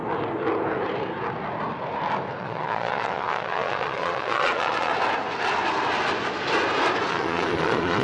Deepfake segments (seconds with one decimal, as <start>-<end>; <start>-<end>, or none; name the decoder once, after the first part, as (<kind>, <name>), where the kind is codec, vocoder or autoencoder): 2.4-4.9 (vocoder, Vocos); 7.1-8.0